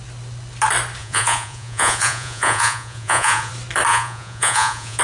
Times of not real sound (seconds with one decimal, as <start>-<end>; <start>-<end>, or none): 1.0-3.5; 3.9-5.0